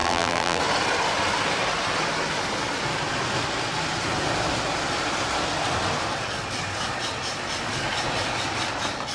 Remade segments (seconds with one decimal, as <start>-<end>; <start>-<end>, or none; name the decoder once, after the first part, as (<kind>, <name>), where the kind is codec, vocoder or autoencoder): 0.0-0.6 (vocoder, BigVGAN v2)